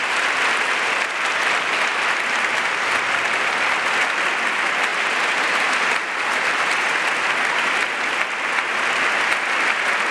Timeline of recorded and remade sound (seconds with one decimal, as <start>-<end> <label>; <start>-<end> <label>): 0.0-4.9 recorded; 4.9-7.0 remade; 7.0-10.1 recorded